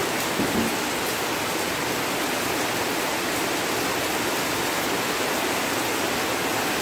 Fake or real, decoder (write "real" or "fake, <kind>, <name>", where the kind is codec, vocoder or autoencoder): real